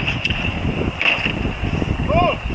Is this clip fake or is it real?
real